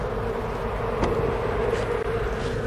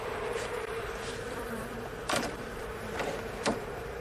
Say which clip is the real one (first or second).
first